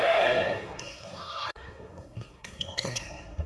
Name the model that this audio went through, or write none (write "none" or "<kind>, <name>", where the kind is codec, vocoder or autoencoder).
codec, SNAC